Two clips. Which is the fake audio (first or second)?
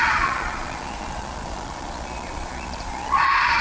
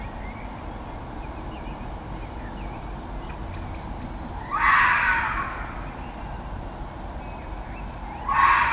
first